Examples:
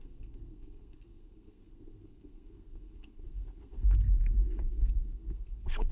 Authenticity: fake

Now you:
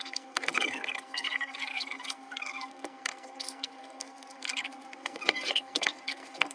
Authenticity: fake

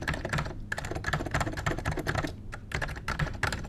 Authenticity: real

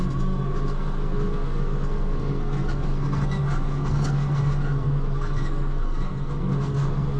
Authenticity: fake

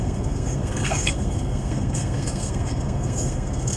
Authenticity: fake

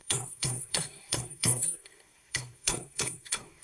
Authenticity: fake